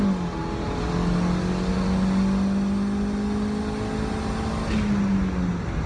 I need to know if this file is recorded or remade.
recorded